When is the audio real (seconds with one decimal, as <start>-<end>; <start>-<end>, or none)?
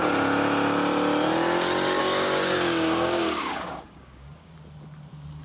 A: 0.0-2.0; 4.5-5.4